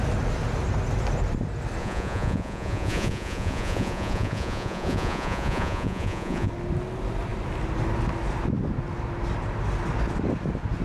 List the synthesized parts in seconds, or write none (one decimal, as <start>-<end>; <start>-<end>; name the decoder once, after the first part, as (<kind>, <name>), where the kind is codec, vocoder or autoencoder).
1.8-6.5 (vocoder, Vocos)